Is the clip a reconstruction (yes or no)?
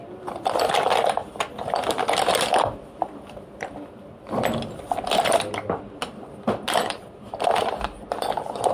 no